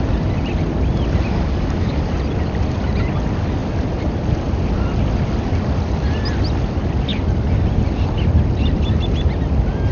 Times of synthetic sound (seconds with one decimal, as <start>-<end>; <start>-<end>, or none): 1.3-2.1